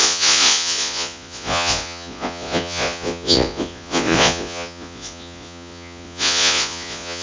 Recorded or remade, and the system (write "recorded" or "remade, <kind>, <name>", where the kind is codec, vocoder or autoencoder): remade, vocoder, Vocos